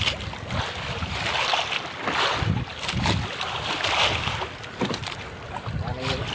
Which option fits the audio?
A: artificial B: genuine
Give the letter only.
B